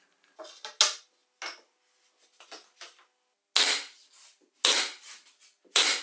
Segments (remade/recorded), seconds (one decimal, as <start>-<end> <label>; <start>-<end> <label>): 0.0-6.0 recorded